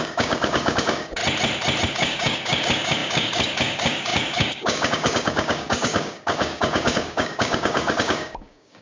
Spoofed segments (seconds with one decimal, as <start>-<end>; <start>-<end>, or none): 0.0-1.2; 1.9-8.8